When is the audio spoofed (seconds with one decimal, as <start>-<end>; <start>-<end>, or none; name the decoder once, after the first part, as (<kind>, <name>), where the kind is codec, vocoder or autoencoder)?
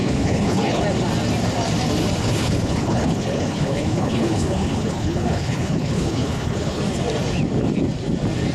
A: 0.0-0.8 (codec, HILCodec); 2.2-6.8